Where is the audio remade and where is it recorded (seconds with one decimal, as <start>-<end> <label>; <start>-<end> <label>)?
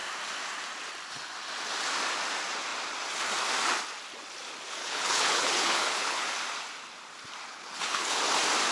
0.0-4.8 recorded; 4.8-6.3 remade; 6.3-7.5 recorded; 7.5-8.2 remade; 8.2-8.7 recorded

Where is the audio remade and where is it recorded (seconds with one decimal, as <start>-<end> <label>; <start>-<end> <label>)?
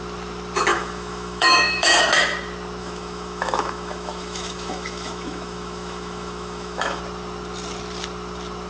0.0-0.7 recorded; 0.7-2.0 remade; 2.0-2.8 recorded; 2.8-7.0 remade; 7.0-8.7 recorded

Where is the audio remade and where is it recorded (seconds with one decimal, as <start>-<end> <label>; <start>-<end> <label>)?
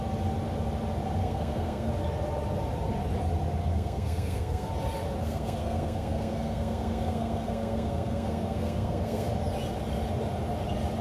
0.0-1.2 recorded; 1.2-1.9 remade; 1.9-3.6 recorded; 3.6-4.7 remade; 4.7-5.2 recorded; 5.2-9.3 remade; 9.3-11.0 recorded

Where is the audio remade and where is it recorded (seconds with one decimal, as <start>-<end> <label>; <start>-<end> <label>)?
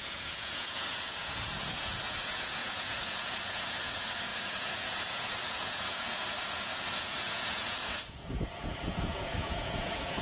0.0-10.2 remade